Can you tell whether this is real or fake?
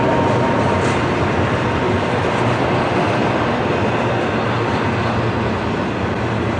real